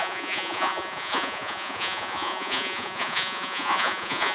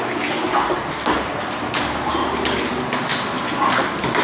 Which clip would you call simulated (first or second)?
first